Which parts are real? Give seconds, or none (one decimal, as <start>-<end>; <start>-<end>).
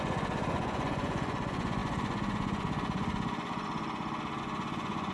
none